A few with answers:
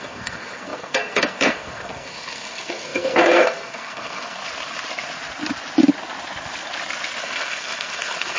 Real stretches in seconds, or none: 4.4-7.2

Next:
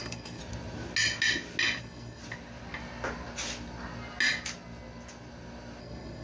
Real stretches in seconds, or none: 0.4-1.8; 2.2-5.8

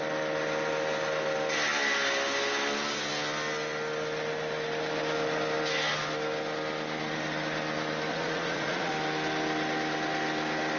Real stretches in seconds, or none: 0.0-8.1; 8.9-10.8

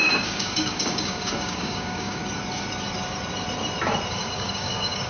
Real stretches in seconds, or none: 2.2-4.1

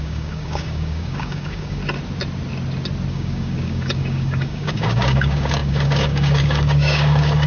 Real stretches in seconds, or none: 1.8-3.1

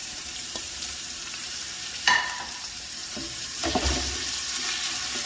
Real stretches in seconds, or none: 2.2-3.0; 3.8-5.3

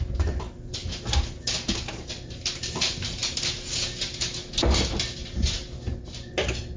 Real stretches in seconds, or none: 0.0-6.8